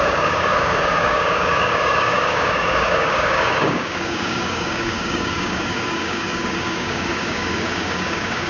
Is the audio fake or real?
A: fake